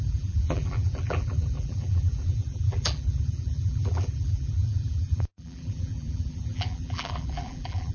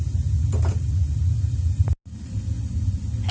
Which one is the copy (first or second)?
first